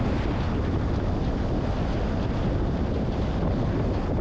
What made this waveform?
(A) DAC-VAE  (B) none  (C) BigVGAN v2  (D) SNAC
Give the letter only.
B